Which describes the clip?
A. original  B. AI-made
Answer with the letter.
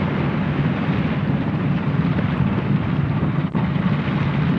A